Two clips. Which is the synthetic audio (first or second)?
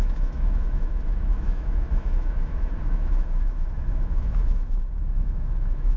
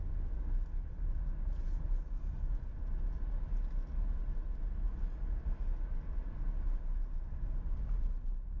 first